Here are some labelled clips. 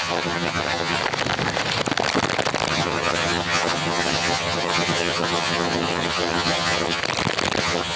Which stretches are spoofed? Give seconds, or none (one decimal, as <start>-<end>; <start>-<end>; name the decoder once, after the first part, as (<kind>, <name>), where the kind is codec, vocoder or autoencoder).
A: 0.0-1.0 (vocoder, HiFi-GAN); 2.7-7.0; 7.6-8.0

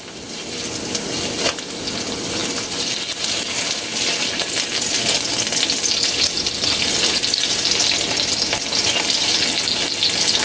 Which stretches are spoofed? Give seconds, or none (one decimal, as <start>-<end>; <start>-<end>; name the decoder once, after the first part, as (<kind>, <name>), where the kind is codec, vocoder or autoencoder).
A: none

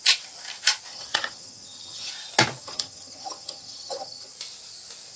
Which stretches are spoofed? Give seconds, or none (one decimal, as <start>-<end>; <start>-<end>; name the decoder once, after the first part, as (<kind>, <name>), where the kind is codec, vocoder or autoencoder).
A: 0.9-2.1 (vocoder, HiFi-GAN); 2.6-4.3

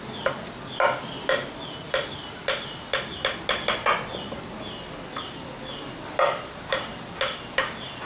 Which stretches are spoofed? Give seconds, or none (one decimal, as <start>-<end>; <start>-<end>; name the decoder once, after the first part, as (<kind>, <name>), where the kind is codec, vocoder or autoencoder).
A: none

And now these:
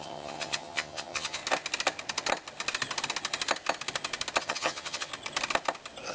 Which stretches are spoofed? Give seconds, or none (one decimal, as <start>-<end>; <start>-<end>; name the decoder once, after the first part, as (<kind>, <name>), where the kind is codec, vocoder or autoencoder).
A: 0.0-1.4 (vocoder, HiFi-GAN); 4.4-5.1

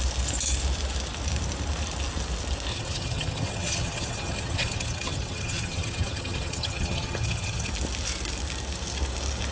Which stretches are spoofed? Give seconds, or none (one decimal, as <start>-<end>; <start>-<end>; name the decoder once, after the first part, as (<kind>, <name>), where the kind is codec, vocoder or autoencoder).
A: 2.7-7.7 (vocoder, HiFi-GAN)

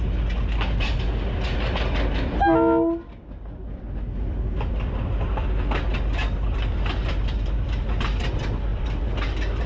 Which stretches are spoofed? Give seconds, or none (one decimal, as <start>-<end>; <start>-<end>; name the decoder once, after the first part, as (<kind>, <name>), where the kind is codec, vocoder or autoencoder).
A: none